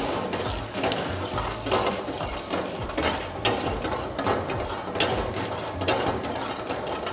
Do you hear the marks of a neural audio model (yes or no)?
no